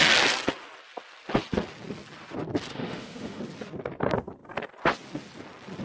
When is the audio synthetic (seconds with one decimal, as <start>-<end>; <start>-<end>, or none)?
2.7-3.4